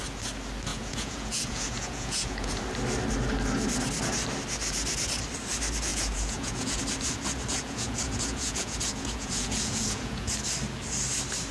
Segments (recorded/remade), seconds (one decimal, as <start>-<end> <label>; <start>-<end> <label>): 0.0-0.7 recorded; 0.7-2.6 remade; 2.6-5.9 recorded; 5.9-6.8 remade; 6.8-7.5 recorded; 7.5-10.3 remade; 10.3-11.5 recorded